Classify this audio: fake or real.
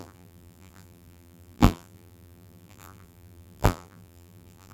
fake